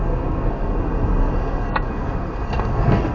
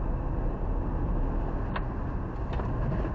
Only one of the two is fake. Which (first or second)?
first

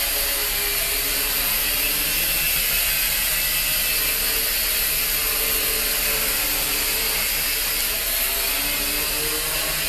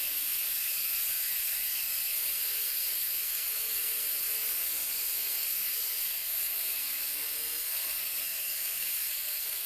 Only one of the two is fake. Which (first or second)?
second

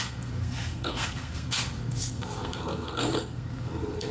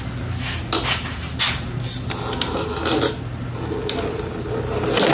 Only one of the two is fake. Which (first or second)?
first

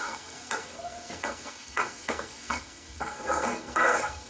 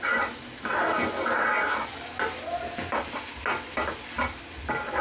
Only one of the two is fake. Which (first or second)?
first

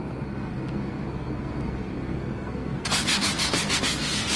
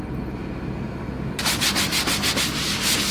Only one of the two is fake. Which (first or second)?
first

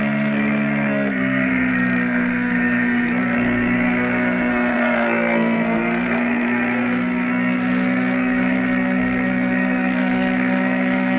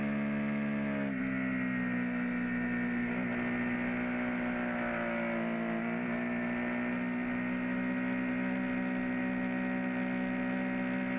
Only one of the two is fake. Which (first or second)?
first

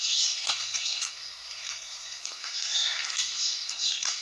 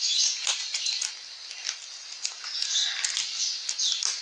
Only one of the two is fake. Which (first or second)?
first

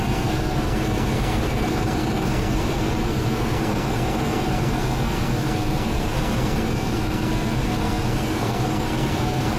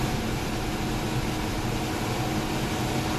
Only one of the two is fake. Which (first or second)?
first